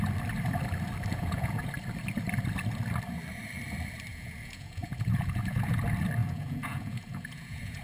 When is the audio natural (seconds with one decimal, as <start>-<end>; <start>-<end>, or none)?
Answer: 0.0-1.1; 1.7-4.1; 5.8-6.2